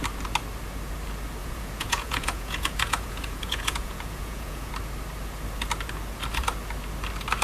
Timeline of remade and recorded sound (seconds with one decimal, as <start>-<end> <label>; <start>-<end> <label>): 0.0-1.4 recorded; 1.4-4.7 remade; 4.7-7.4 recorded